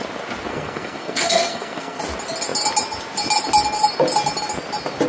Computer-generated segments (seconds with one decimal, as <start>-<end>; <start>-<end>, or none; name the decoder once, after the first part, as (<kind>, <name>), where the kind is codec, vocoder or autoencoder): 0.5-2.0 (codec, SNAC)